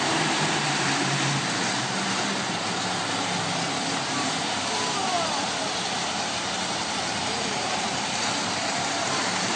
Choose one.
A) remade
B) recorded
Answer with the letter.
A